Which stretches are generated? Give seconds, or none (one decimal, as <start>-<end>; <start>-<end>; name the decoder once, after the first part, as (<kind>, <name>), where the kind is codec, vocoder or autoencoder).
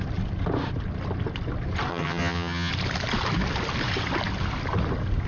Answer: 1.9-2.7 (vocoder, HiFi-GAN)